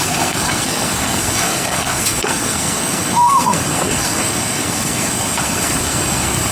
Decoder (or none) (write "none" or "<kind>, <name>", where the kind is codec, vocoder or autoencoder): codec, SNAC